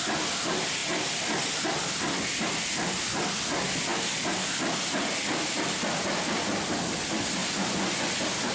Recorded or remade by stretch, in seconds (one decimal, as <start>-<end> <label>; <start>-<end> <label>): 0.0-7.4 recorded; 7.4-8.1 remade; 8.1-8.5 recorded